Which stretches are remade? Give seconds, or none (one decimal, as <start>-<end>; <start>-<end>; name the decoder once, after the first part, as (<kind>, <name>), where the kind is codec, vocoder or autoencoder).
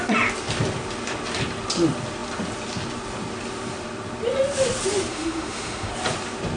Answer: 5.1-5.9 (autoencoder, DAC-VAE)